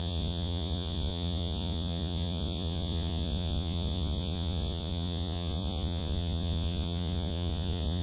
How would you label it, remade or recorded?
remade